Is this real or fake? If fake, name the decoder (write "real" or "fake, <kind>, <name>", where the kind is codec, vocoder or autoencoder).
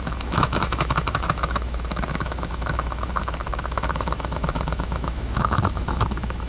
fake, autoencoder, DAC-VAE